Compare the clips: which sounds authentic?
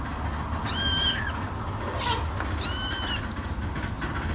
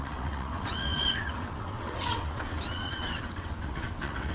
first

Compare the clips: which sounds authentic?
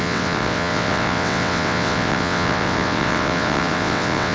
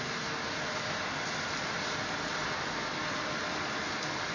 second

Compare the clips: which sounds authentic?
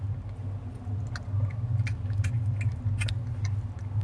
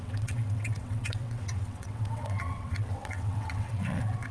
first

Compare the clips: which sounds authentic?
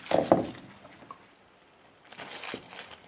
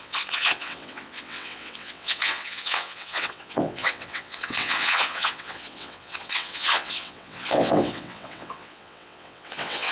first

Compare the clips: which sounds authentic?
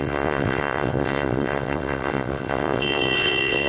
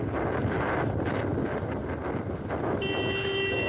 second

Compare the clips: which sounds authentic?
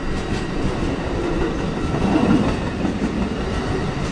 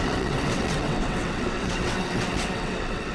first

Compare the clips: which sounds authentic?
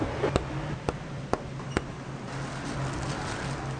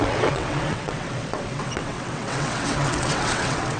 first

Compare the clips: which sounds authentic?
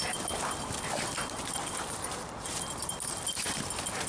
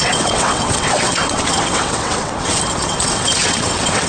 first